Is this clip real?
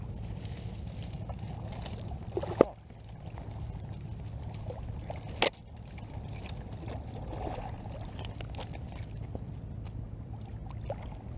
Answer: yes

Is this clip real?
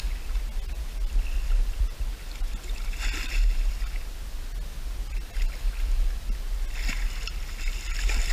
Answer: yes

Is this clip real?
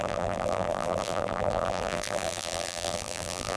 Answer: no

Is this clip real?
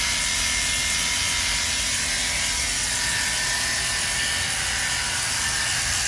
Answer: yes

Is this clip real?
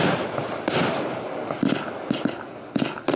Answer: yes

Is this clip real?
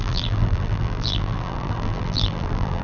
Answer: no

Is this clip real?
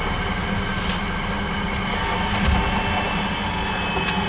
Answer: yes